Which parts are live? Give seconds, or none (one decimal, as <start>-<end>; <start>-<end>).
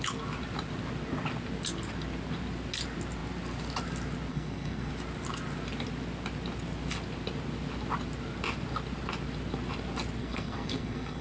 0.0-4.3; 4.9-10.2